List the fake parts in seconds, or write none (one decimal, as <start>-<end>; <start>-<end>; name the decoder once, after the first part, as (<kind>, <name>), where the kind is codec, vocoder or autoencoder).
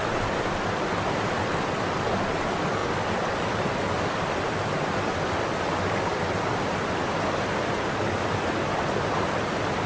none